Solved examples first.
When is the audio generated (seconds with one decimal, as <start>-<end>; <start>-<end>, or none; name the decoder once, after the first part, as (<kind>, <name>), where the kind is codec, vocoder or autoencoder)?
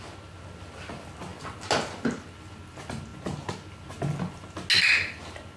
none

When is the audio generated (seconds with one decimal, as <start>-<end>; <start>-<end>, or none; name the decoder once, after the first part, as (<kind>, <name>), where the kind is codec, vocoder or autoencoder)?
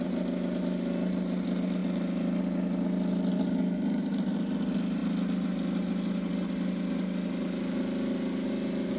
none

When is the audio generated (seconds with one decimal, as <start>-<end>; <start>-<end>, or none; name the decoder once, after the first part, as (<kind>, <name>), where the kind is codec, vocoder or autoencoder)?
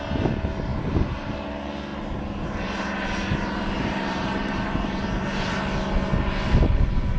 0.7-1.3 (vocoder, BigVGAN v2); 1.9-5.6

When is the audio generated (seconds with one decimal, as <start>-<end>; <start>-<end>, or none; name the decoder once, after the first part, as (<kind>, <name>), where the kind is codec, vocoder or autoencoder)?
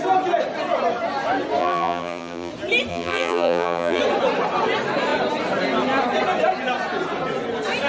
1.6-2.5 (vocoder, BigVGAN v2); 2.9-4.0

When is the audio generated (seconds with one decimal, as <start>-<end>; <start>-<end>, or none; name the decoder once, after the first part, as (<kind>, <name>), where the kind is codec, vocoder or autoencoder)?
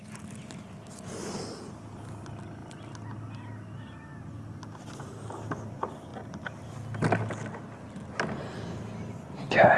none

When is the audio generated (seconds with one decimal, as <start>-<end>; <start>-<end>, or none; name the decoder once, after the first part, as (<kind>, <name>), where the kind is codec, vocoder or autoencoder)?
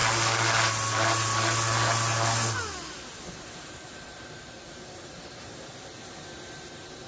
3.4-7.1 (vocoder, BigVGAN v2)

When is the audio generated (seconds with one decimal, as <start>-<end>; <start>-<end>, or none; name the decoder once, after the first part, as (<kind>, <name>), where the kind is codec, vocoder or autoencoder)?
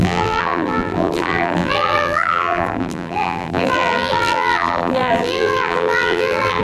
0.0-6.6 (vocoder, BigVGAN v2)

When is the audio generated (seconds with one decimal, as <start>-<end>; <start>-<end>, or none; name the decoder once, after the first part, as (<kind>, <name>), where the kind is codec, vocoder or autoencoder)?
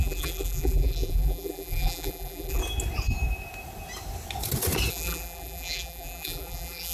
0.0-2.6 (vocoder, BigVGAN v2); 4.9-6.9